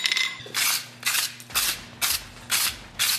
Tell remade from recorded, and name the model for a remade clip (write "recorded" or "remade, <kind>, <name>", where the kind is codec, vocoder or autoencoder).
recorded